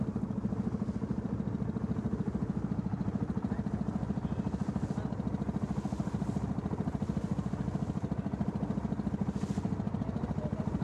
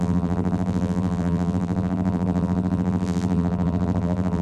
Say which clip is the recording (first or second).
first